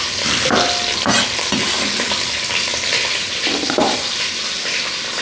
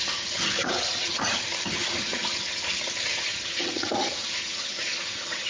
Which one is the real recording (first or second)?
first